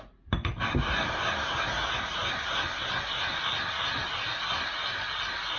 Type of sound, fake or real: real